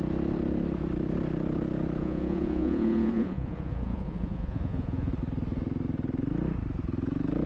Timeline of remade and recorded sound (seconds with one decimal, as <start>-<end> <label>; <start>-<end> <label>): 0.0-2.0 recorded; 2.0-5.1 remade; 5.1-7.5 recorded